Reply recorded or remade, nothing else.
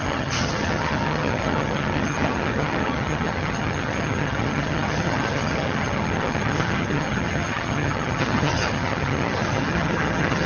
remade